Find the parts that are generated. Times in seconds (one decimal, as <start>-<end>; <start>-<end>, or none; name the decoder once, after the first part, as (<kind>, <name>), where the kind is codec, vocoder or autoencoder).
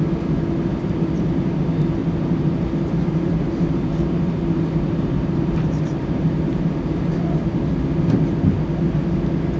0.7-1.3 (vocoder, BigVGAN v2); 2.0-7.2